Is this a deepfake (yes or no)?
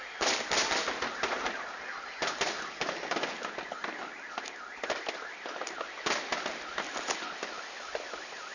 no